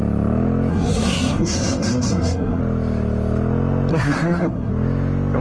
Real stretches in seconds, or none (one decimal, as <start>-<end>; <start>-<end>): 0.0-0.7; 2.6-3.9; 4.7-5.4